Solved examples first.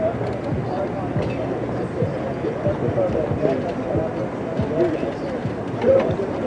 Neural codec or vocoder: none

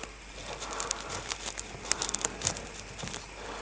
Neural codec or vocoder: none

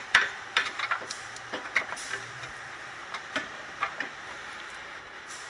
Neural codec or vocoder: vocoder, BigVGAN v2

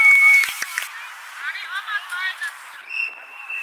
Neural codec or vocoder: vocoder, BigVGAN v2